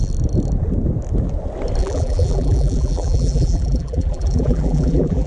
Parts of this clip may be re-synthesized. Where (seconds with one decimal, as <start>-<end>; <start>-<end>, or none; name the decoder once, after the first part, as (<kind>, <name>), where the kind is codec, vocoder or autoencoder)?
1.8-5.3 (vocoder, BigVGAN v2)